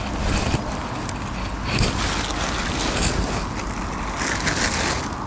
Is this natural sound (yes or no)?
yes